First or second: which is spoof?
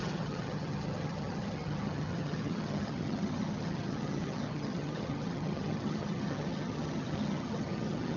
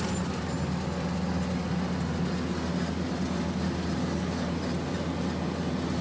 first